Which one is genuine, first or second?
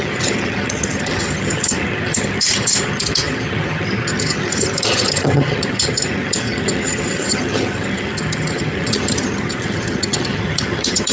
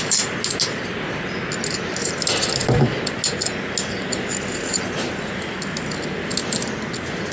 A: second